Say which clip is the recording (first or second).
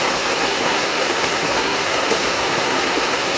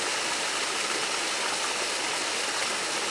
second